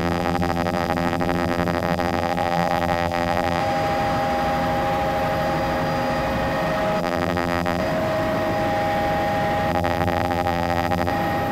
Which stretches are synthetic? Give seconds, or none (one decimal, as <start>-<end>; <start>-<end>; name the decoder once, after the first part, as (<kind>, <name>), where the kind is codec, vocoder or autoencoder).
0.0-3.6 (vocoder, BigVGAN v2); 7.0-7.8; 9.7-11.1

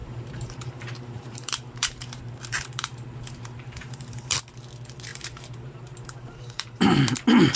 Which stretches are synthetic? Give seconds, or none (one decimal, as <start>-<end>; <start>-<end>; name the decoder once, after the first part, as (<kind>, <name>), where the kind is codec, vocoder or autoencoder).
0.0-4.4 (vocoder, BigVGAN v2); 5.1-7.0

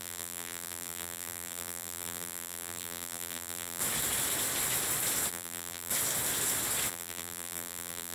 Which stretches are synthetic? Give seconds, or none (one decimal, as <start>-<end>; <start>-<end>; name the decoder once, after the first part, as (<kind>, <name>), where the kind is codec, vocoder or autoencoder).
0.0-3.8 (vocoder, BigVGAN v2); 5.3-5.9; 6.9-8.1